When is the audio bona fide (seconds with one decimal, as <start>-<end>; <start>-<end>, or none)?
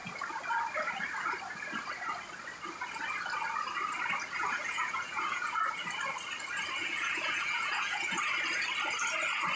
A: 0.0-4.4; 5.6-6.8; 8.2-9.6